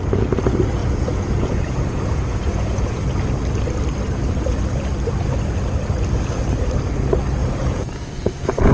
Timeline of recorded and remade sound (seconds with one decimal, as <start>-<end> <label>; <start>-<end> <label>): 0.0-0.8 recorded; 0.8-3.0 remade; 3.0-7.4 recorded; 7.4-8.7 remade